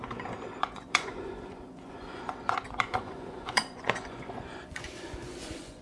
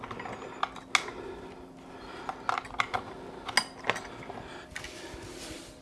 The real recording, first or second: second